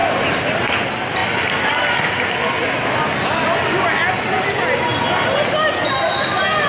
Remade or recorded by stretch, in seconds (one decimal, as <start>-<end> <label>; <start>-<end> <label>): 0.0-0.6 remade; 0.6-6.7 recorded